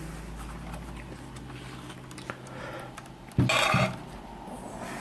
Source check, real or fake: real